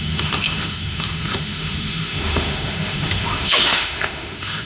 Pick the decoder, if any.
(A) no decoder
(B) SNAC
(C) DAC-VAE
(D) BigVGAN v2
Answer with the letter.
C